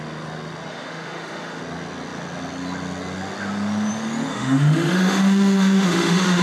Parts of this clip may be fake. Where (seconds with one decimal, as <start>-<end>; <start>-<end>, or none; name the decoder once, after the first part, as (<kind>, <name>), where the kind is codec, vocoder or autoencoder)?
0.7-1.6 (autoencoder, DAC-VAE); 4.3-6.4